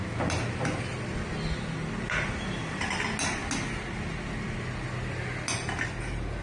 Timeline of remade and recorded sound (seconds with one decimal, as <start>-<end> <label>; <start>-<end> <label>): 0.0-6.4 recorded